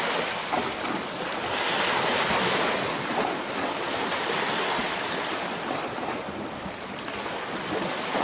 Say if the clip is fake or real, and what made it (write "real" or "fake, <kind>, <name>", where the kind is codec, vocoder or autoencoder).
real